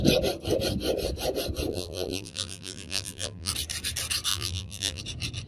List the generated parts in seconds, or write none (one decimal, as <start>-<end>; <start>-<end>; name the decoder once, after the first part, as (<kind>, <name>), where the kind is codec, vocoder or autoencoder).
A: 1.7-3.5 (vocoder, BigVGAN v2); 4.3-5.0